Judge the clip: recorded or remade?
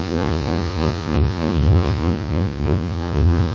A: remade